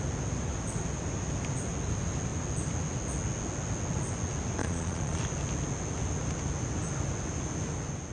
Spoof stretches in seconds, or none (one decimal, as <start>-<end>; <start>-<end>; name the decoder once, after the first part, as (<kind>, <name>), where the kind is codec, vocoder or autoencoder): 4.6-5.2 (vocoder, Vocos)